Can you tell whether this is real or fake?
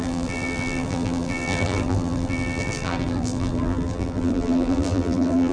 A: fake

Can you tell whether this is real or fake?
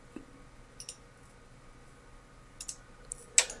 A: real